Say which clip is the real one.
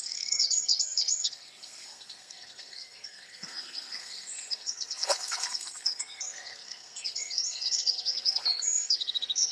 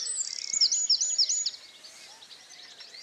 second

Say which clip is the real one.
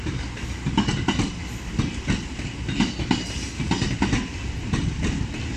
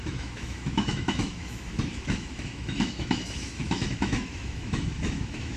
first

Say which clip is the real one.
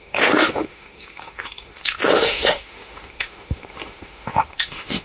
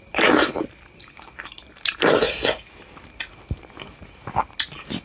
second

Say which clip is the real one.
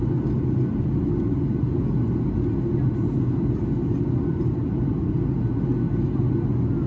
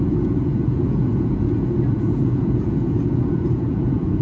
first